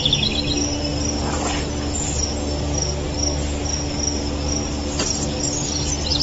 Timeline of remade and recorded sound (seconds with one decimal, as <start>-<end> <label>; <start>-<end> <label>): 0.0-6.2 recorded